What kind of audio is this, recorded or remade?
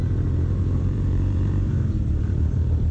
remade